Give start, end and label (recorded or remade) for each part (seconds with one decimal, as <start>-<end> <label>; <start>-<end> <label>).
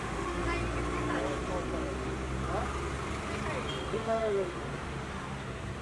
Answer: 0.0-0.4 remade; 0.4-3.9 recorded; 3.9-4.7 remade; 4.7-5.8 recorded